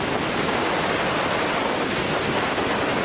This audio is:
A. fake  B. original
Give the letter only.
B